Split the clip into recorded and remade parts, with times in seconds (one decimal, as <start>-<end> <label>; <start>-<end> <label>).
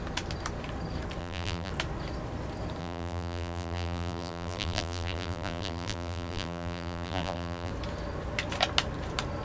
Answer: 0.0-1.2 recorded; 1.2-1.7 remade; 1.7-2.8 recorded; 2.8-7.7 remade; 7.7-9.4 recorded